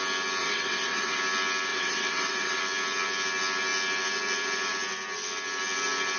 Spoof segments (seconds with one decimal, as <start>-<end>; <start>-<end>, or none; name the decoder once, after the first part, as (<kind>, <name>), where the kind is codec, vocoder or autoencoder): 0.4-1.2 (vocoder, WaveNeXt); 1.7-2.6